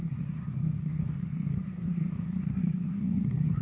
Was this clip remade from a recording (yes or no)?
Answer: yes